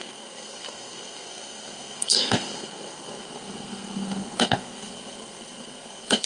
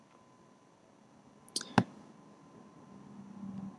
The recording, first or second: second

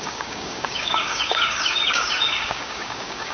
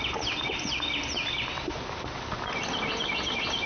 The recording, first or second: second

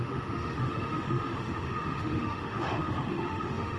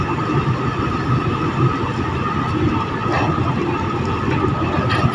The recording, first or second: second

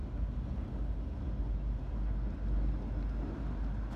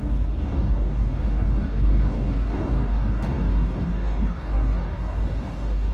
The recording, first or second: first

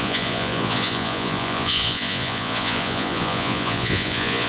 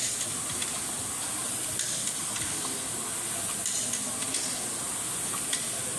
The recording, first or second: second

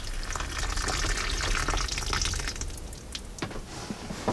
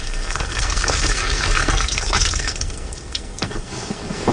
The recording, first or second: first